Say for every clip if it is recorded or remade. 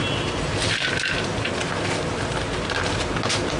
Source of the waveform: recorded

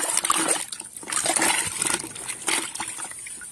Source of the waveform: recorded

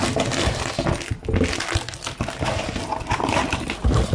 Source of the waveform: recorded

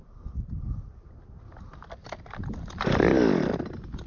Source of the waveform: recorded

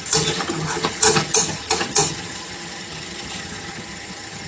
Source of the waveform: remade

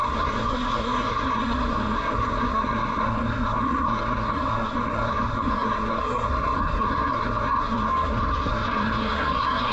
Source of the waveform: remade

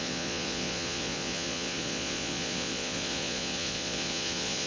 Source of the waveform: remade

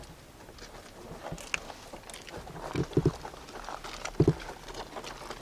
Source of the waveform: recorded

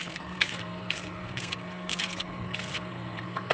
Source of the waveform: remade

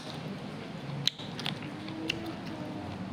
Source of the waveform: recorded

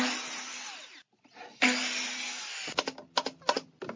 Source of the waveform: recorded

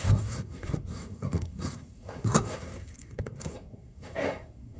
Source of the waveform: remade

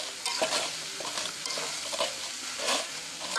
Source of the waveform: recorded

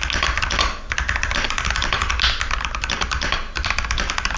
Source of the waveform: recorded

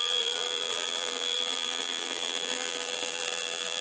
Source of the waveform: remade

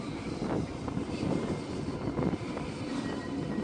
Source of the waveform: recorded